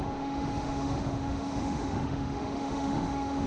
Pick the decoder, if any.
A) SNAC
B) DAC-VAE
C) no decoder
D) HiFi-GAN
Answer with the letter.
B